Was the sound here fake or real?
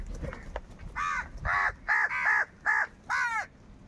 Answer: real